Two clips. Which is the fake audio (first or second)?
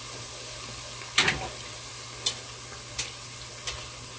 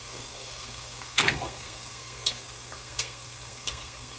second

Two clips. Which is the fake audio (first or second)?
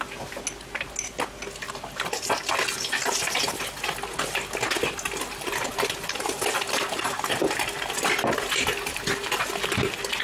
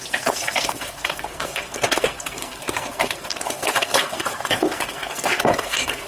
second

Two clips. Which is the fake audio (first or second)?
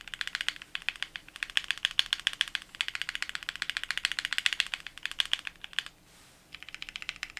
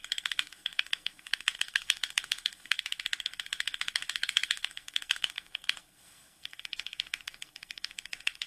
second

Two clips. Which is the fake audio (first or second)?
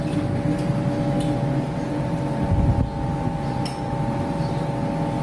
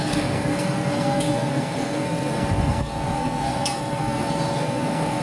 second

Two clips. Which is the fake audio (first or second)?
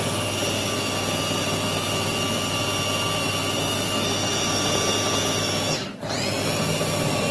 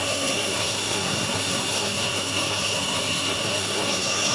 second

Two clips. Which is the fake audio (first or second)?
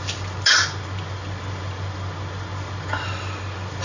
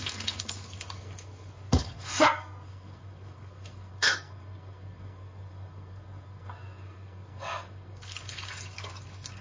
second